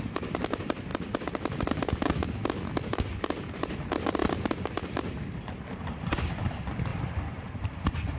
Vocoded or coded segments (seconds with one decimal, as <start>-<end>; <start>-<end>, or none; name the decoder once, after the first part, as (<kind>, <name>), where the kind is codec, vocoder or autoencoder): 0.0-0.9 (vocoder, BigVGAN v2); 3.5-4.2; 4.7-8.2